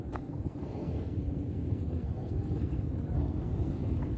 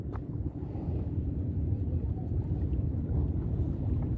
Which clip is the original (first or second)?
second